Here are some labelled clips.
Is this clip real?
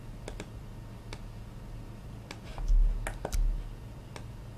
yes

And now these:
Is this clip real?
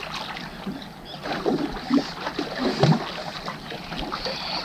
yes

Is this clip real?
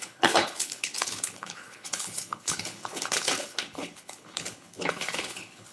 no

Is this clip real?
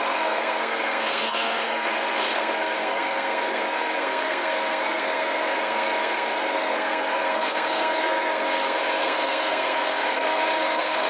no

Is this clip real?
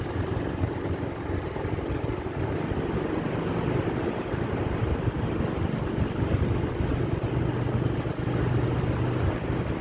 yes